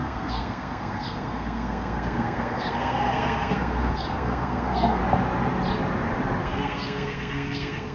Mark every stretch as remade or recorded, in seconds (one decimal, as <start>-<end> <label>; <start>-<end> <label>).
0.0-5.0 remade; 5.0-6.4 recorded; 6.4-7.9 remade